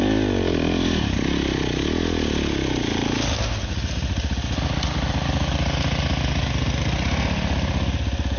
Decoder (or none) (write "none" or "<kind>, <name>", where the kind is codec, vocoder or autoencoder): none